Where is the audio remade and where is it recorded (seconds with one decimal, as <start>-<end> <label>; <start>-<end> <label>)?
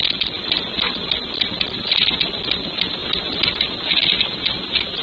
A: 0.0-5.0 recorded